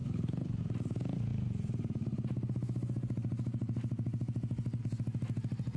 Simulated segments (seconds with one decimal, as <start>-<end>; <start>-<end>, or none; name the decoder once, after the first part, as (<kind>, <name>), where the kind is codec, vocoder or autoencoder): 0.0-0.6 (codec, HILCodec)